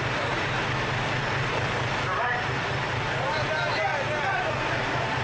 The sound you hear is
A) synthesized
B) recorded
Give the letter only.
A